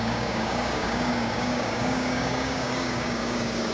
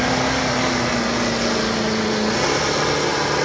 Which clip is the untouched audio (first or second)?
second